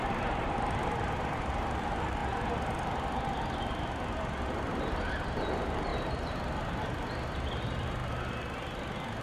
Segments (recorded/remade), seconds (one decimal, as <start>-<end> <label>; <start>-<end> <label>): 0.0-2.2 remade; 2.2-5.0 recorded; 5.0-5.9 remade; 5.9-7.6 recorded; 7.6-8.0 remade; 8.0-9.2 recorded